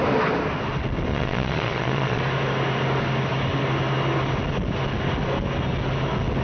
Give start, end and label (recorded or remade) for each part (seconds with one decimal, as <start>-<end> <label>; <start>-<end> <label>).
0.0-1.1 recorded; 1.1-2.2 remade; 2.2-6.4 recorded